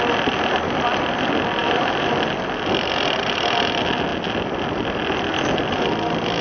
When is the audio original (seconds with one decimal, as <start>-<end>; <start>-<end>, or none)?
0.0-1.6; 2.1-6.4